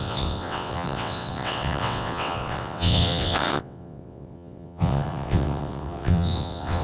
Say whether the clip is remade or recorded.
remade